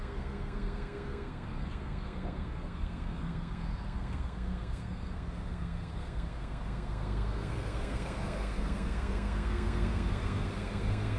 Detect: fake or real fake